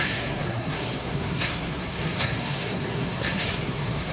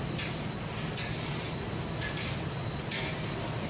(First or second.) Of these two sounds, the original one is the second